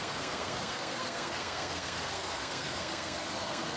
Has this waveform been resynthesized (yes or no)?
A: yes